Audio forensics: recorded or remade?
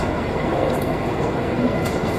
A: remade